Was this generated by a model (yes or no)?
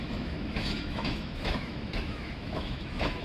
yes